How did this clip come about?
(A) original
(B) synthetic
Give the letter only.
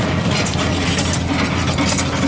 A